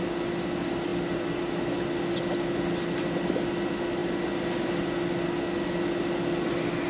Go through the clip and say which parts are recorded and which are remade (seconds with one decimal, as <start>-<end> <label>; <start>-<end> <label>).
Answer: 0.0-6.9 recorded

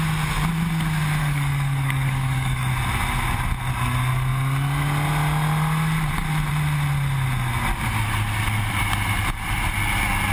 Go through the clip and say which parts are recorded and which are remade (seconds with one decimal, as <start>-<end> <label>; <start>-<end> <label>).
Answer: 0.0-1.2 recorded; 1.2-2.7 remade; 2.7-10.3 recorded

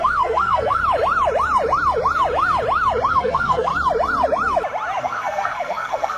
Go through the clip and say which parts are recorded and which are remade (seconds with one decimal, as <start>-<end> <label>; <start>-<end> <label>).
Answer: 0.0-0.8 remade; 0.8-3.1 recorded; 3.1-3.7 remade; 3.7-5.0 recorded; 5.0-6.2 remade

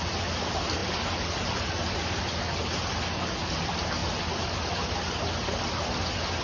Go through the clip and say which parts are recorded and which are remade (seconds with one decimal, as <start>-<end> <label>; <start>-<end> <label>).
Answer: 0.0-6.4 recorded

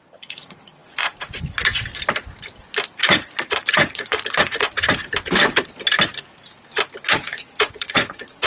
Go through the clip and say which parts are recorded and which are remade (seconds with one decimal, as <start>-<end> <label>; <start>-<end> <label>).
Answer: 0.0-1.9 remade; 1.9-3.0 recorded; 3.0-5.0 remade; 5.0-7.1 recorded; 7.1-8.5 remade

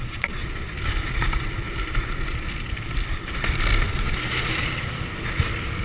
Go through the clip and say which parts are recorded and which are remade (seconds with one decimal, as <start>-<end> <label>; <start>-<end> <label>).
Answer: 0.0-0.4 remade; 0.4-3.9 recorded; 3.9-4.5 remade; 4.5-5.8 recorded